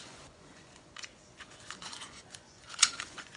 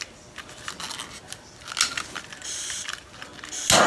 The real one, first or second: second